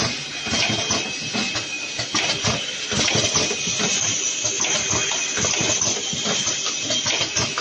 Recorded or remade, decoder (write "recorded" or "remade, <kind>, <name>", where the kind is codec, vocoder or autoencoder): recorded